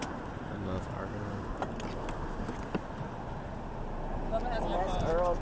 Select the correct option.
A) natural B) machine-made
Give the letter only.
A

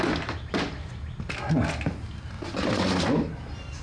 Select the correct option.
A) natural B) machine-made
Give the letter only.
A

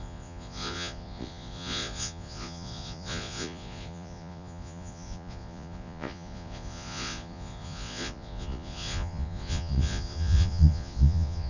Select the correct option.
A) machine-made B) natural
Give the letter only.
A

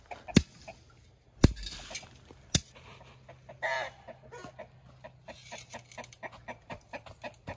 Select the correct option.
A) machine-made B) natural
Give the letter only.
B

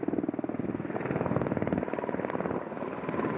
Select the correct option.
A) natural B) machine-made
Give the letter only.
A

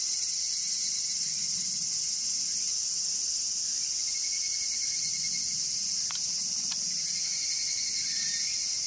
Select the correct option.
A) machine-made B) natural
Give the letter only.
B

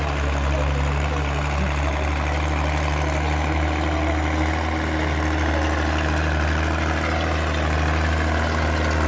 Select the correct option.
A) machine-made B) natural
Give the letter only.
B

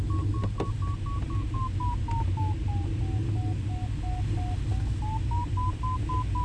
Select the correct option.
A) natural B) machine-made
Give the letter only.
A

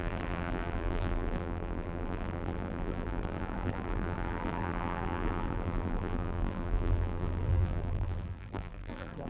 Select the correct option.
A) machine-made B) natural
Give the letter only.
A